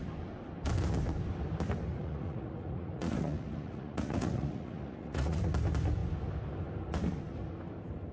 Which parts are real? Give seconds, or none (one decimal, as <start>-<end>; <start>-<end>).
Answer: 0.0-2.0; 5.4-8.1